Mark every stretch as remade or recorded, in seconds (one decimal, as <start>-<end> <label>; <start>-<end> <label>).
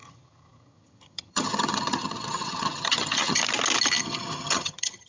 0.0-3.4 remade; 3.4-4.0 recorded; 4.0-5.1 remade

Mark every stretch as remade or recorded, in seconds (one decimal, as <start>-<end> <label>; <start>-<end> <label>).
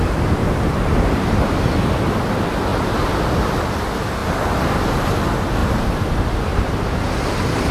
0.0-0.4 recorded; 0.4-1.6 remade; 1.6-5.6 recorded; 5.6-7.0 remade; 7.0-7.7 recorded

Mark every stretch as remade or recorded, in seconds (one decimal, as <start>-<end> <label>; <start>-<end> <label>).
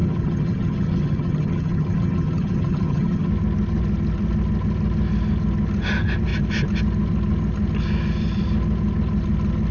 0.0-3.3 remade; 3.3-9.7 recorded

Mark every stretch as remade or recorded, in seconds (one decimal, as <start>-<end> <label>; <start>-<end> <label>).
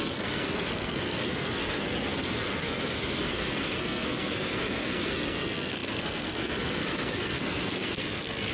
0.0-8.5 remade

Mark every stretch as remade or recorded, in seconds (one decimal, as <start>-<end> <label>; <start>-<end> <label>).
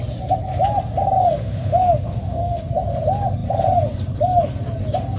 0.0-1.2 recorded; 1.2-2.7 remade; 2.7-5.2 recorded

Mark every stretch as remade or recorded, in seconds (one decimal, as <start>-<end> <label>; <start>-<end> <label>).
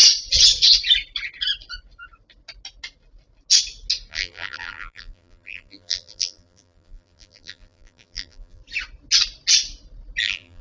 0.0-4.1 recorded; 4.1-8.6 remade; 8.6-10.2 recorded; 10.2-10.6 remade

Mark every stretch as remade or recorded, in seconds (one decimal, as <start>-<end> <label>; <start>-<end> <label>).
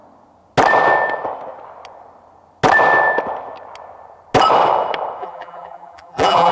0.0-5.2 recorded; 5.2-6.5 remade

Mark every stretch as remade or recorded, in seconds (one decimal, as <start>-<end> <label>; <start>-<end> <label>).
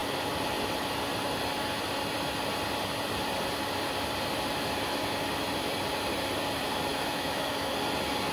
0.0-6.9 recorded; 6.9-7.7 remade; 7.7-8.3 recorded